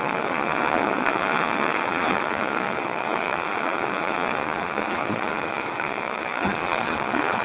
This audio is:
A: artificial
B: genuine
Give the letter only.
A